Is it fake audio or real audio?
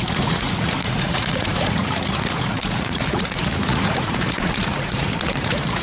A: fake